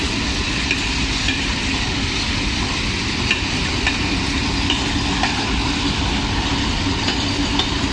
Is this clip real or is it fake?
real